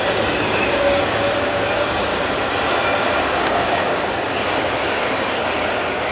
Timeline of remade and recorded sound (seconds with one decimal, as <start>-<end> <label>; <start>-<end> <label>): 0.0-2.1 remade; 2.1-3.0 recorded; 3.0-6.1 remade